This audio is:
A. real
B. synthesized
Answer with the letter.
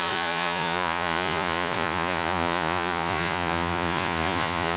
B